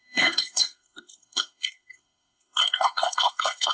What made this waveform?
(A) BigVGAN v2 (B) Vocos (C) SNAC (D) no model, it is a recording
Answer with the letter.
C